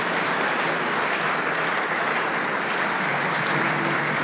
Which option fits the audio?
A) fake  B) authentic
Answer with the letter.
B